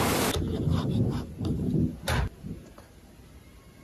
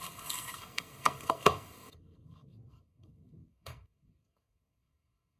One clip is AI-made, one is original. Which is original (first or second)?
first